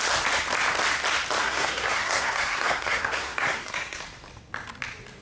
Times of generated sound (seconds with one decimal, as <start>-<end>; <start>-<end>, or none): 1.4-4.0